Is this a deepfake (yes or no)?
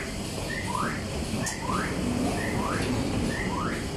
no